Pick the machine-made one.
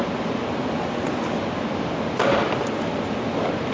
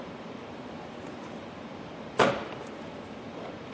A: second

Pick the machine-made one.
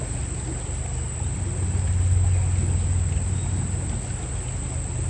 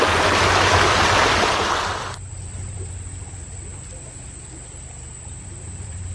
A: second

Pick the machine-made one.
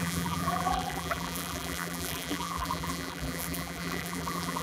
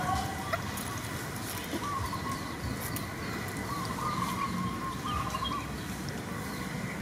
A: first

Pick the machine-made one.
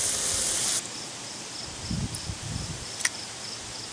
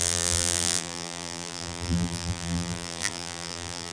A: second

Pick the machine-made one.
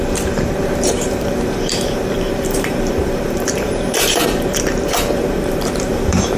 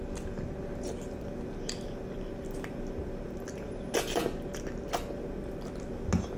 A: first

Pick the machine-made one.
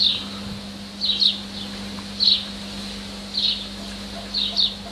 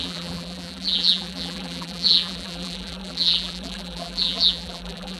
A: second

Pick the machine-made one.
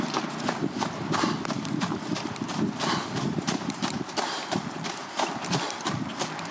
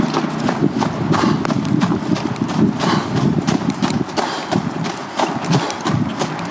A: first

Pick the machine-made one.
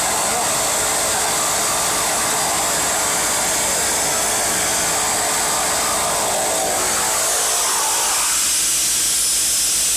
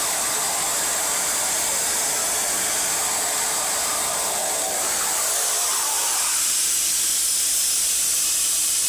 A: second